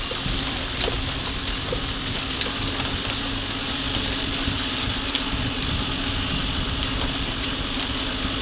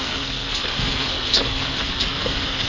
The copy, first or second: second